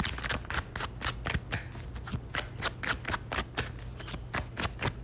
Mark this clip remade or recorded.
recorded